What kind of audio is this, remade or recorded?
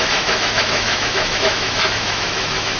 remade